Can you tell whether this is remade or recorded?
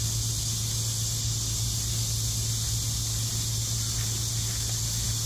recorded